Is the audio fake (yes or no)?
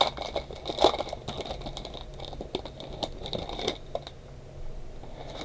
no